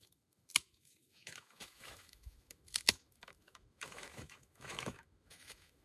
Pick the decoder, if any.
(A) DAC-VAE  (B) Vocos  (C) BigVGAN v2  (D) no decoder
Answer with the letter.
A